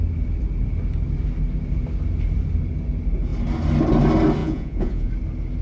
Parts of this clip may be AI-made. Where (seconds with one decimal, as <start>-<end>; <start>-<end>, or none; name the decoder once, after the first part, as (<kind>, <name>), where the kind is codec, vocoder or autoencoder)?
4.4-5.1 (vocoder, Vocos)

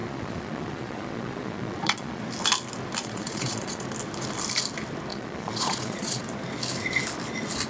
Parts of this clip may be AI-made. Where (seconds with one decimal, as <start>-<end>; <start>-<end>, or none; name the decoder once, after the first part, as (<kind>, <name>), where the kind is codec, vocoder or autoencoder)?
0.0-2.2 (vocoder, Vocos); 3.0-3.8; 5.1-6.2

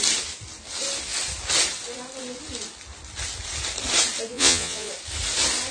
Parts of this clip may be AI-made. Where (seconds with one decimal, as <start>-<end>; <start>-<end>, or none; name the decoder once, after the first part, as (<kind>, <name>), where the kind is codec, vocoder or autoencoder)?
4.3-4.9 (vocoder, Vocos)

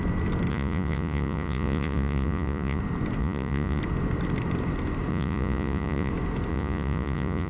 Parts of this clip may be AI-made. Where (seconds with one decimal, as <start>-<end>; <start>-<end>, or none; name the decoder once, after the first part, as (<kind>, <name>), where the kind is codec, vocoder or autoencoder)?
0.5-2.8 (vocoder, Vocos); 3.2-3.8; 5.1-6.1; 6.5-7.5

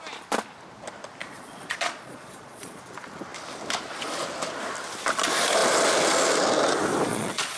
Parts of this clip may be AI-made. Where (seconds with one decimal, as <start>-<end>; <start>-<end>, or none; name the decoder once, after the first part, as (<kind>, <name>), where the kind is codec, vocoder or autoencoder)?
1.2-2.8 (vocoder, Vocos); 7.1-7.6

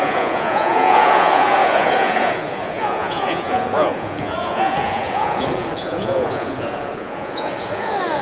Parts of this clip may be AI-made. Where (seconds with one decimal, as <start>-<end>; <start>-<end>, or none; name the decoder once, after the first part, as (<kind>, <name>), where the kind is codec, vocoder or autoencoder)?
0.0-8.2 (vocoder, Vocos)